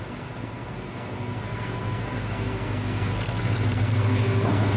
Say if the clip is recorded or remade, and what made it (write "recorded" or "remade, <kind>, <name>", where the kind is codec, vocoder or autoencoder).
remade, codec, SNAC